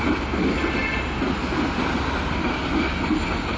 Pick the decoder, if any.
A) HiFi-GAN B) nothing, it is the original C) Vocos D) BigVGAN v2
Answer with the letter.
B